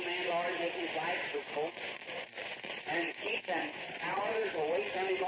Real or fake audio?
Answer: fake